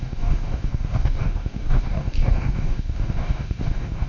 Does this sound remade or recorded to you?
remade